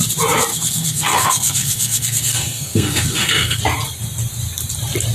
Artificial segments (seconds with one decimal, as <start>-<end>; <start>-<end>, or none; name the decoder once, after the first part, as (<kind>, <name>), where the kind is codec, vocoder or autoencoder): 0.5-3.6 (codec, SNAC)